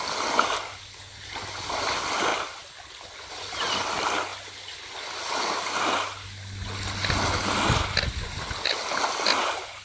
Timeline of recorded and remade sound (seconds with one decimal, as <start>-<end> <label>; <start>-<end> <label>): 0.0-9.8 recorded